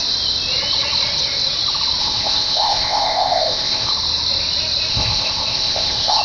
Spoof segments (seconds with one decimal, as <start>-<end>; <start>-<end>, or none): 2.0-3.9; 4.9-6.2